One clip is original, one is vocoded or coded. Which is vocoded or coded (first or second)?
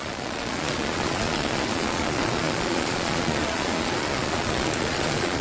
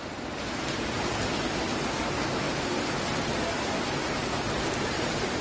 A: first